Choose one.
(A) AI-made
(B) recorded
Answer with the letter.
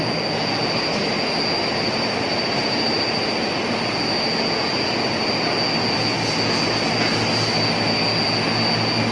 B